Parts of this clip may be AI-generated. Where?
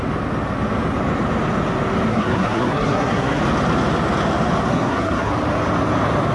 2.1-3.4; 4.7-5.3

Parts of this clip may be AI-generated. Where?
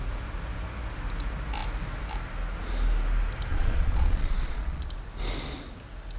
3.5-4.9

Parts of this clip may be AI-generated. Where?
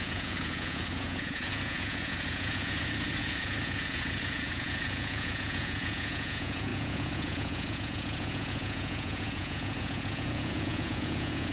0.0-11.5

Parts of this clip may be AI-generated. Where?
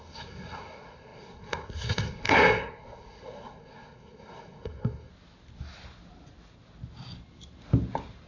0.0-5.1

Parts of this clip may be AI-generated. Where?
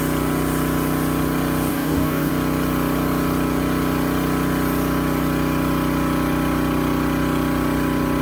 1.7-2.3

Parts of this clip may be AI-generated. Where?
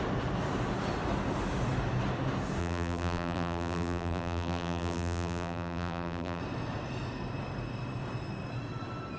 2.6-6.4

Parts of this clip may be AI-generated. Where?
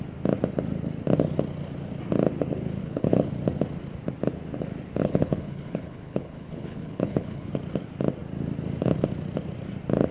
2.8-3.3; 5.0-7.5